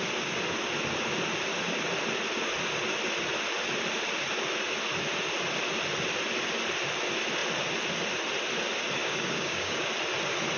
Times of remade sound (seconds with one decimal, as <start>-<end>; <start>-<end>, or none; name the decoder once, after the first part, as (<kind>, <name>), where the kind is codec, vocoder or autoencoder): 9.0-9.9 (codec, DAC)